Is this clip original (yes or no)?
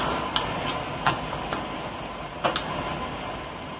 yes